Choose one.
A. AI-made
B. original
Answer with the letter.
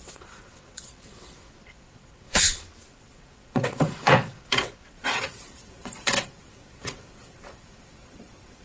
A